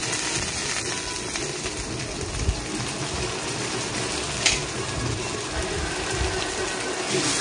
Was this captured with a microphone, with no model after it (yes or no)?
yes